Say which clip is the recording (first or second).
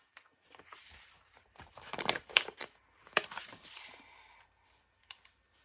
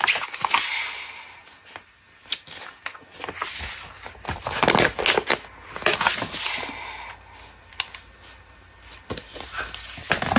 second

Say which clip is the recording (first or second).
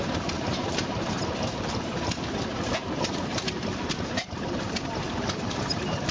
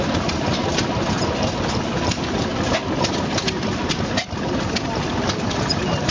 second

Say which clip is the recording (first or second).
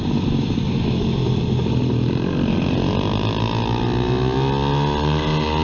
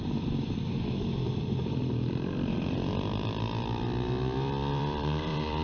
first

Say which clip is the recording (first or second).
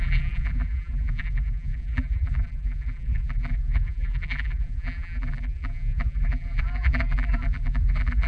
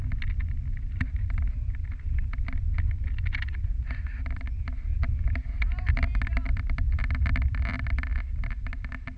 second